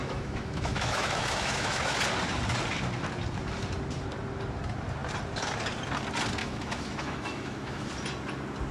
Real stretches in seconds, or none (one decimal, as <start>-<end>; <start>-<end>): 2.0-6.4; 7.9-8.7